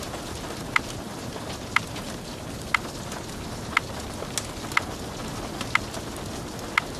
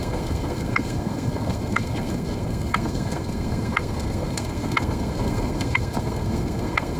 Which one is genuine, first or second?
first